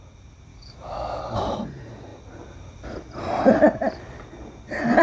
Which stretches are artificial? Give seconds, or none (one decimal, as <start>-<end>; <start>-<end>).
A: 0.5-1.2